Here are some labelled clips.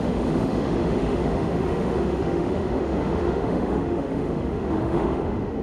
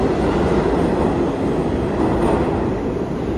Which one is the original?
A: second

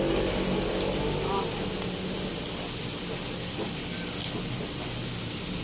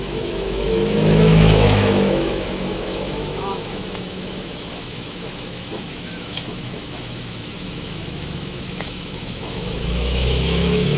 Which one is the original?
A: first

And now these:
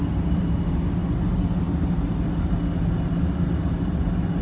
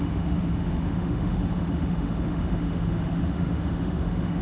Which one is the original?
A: first